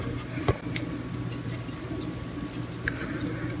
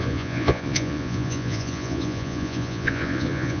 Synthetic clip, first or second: second